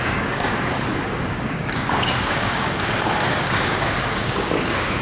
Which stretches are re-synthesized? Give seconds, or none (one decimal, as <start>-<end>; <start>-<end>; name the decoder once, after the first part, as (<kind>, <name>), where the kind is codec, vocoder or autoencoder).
0.0-5.0 (codec, DAC)